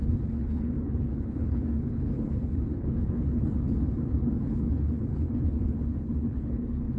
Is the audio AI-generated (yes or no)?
yes